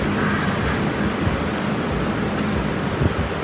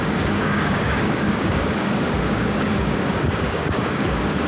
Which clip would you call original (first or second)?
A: first